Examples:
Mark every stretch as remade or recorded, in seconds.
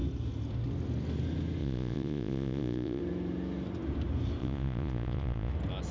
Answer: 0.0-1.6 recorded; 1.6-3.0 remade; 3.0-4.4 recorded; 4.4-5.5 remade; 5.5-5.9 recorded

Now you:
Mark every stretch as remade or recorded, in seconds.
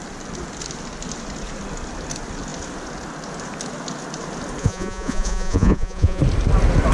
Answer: 0.0-4.6 recorded; 4.6-6.2 remade; 6.2-6.9 recorded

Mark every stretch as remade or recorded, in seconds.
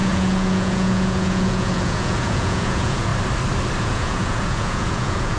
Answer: 0.0-3.1 remade; 3.1-3.8 recorded; 3.8-5.4 remade